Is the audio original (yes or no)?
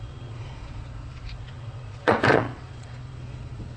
no